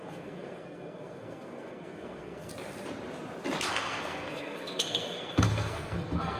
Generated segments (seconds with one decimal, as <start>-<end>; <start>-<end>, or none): 0.0-2.5; 3.7-6.4